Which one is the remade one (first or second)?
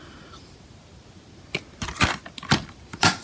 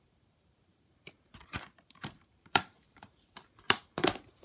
second